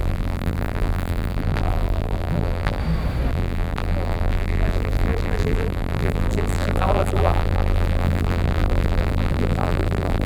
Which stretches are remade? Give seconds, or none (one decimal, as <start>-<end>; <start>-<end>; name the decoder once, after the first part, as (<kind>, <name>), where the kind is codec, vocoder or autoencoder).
0.0-2.8 (vocoder, BigVGAN v2); 3.3-10.3